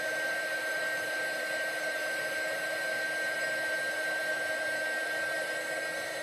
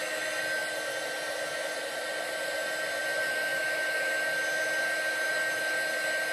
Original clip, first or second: second